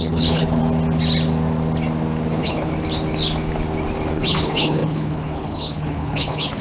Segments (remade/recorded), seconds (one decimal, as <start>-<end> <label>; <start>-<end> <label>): 0.0-0.6 remade; 0.6-2.3 recorded; 2.3-2.7 remade; 2.7-4.1 recorded; 4.1-6.6 remade

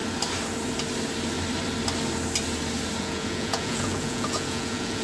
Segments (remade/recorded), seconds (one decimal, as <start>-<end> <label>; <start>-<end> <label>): 0.0-3.0 recorded; 3.0-5.0 remade